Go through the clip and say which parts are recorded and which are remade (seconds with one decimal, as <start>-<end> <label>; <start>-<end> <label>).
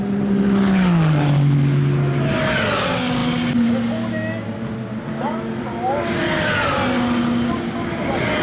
0.0-8.4 recorded